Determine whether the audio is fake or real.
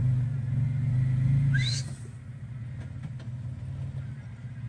real